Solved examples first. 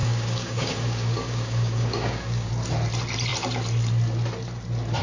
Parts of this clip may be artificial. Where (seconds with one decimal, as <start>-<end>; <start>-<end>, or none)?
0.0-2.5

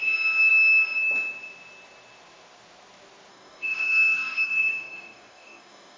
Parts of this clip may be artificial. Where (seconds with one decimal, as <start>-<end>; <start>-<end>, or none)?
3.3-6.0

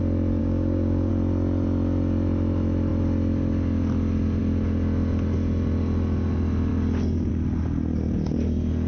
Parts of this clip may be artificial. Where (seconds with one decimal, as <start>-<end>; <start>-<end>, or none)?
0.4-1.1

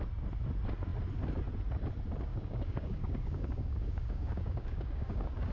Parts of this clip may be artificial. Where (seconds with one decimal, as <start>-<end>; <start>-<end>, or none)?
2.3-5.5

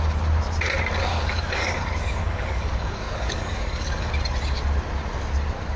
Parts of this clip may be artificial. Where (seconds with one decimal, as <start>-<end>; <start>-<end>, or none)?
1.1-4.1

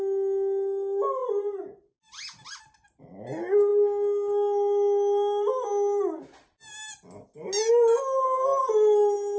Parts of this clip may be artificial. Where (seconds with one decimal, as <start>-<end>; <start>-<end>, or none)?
none

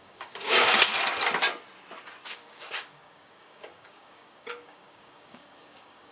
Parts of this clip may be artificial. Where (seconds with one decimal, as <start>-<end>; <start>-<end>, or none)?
0.0-0.9; 2.3-6.1

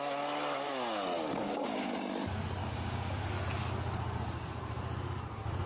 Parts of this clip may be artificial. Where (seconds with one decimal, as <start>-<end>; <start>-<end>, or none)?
1.1-1.9; 2.6-3.3